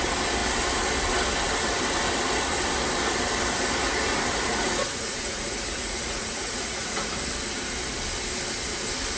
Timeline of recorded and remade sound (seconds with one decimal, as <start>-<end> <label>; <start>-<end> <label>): 0.0-4.5 recorded; 4.5-7.2 remade; 7.2-9.2 recorded